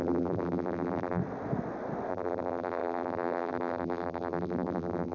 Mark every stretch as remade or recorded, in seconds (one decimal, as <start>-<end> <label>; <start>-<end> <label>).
0.0-1.2 remade; 1.2-2.1 recorded; 2.1-5.1 remade